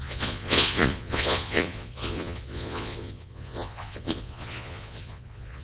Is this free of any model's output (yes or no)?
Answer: no